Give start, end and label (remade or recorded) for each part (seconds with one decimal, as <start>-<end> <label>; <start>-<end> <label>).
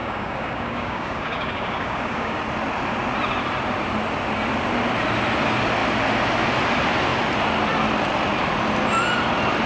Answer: 0.0-2.4 remade; 2.4-9.7 recorded